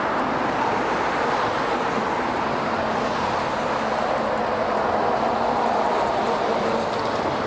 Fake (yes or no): no